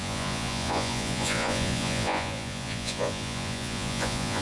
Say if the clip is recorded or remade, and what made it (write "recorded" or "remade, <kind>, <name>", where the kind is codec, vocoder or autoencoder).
remade, vocoder, Vocos